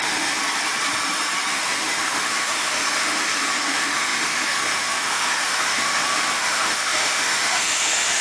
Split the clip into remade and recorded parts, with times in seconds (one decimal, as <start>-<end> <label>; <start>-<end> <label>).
0.0-0.4 remade; 0.4-1.5 recorded; 1.5-8.2 remade